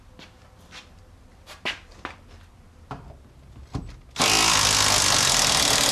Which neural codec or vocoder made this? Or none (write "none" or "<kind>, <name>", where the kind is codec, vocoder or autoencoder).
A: none